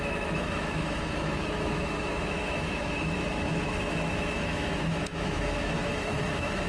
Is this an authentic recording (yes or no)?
no